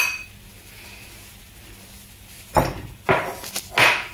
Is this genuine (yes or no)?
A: yes